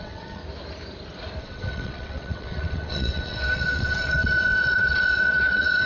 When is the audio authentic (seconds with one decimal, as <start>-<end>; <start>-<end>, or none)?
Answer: 0.4-1.4